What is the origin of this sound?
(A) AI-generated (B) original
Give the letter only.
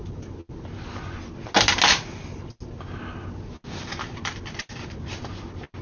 B